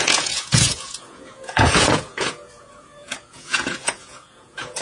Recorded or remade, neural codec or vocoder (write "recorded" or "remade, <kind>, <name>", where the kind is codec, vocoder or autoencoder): remade, vocoder, Vocos